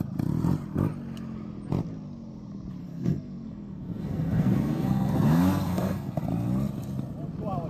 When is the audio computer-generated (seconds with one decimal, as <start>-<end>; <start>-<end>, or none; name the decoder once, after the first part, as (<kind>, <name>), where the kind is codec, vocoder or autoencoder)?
2.8-6.1 (codec, SNAC)